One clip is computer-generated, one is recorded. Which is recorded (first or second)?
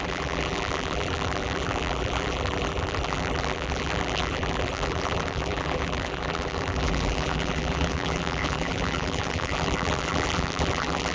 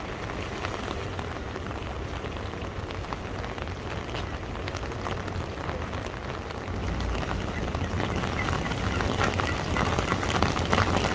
second